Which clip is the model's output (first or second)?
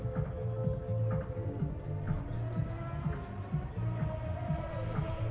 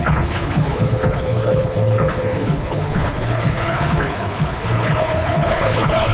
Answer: second